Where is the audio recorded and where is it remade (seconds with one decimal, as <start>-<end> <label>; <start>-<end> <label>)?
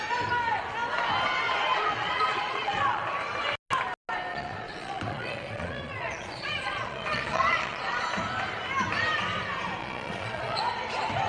0.0-1.7 recorded; 1.7-3.0 remade; 3.0-4.3 recorded; 4.3-8.1 remade; 8.1-9.8 recorded; 9.8-10.6 remade; 10.6-11.3 recorded